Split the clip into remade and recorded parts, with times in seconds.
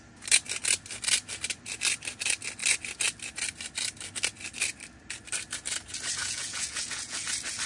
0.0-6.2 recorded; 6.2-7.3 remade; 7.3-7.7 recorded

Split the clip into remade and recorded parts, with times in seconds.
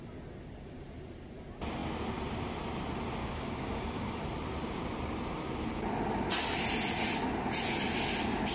0.0-3.2 recorded; 3.2-4.2 remade; 4.2-8.5 recorded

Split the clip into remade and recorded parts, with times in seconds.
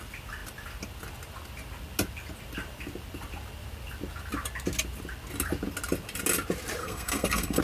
0.0-6.8 recorded; 6.8-7.6 remade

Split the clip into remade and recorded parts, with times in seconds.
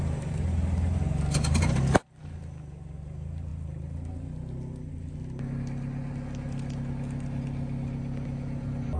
0.0-9.0 recorded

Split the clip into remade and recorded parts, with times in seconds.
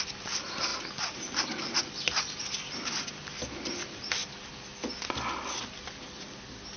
0.0-6.8 recorded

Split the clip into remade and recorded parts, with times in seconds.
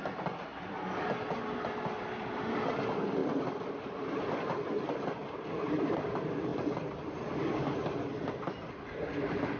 0.0-0.5 recorded; 0.5-1.4 remade; 1.4-3.2 recorded; 3.2-3.7 remade; 3.7-9.6 recorded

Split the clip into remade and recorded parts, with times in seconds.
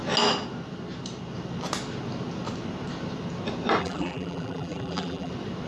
0.0-3.8 recorded; 3.8-5.3 remade; 5.3-5.7 recorded